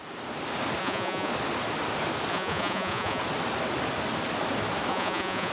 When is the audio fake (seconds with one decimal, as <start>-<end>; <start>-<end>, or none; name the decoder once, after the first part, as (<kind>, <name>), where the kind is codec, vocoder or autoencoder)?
0.8-1.3 (vocoder, Vocos); 2.3-3.2; 4.9-5.5